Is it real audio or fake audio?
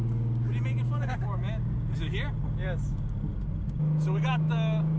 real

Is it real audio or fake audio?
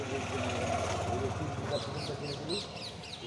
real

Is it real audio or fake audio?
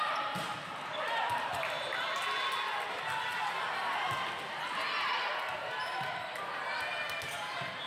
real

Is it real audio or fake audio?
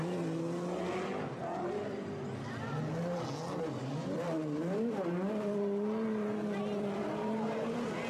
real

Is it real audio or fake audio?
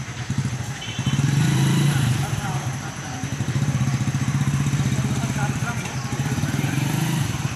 fake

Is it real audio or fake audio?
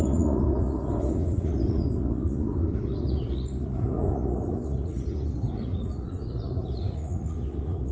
fake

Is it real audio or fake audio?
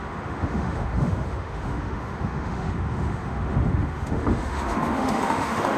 fake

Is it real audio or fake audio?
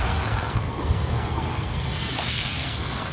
fake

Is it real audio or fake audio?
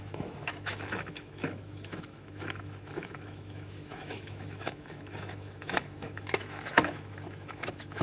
fake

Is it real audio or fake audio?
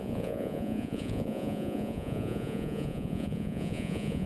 fake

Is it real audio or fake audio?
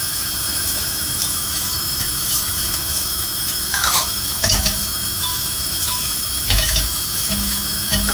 fake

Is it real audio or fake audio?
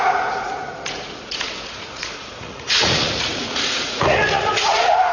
fake